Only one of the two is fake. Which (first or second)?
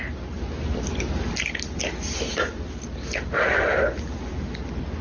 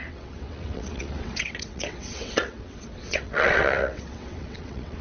second